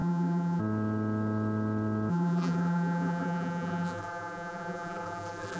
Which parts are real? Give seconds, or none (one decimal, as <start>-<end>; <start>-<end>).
0.6-2.1